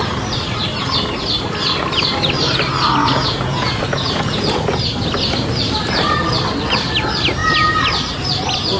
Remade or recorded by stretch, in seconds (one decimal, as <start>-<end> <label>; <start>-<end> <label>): 0.0-3.0 recorded; 3.0-4.6 remade; 4.6-8.8 recorded